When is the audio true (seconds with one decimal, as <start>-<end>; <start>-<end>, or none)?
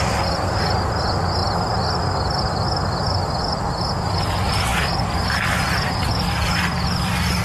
0.0-7.4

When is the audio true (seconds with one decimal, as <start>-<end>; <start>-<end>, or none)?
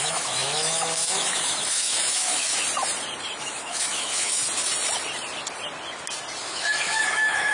2.5-3.4; 4.4-6.4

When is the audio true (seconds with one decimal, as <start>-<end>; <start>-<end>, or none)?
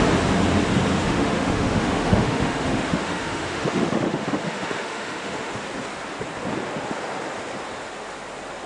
0.0-0.9; 5.5-8.7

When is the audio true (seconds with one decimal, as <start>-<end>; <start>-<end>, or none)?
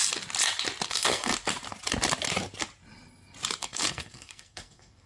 0.0-0.9; 1.3-3.6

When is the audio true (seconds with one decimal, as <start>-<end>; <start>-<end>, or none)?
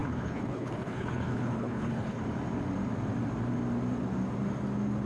2.2-5.1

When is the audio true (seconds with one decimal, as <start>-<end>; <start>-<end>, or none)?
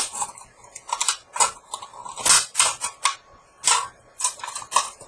0.0-5.1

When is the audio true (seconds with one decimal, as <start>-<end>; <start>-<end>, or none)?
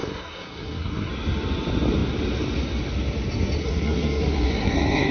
1.1-3.6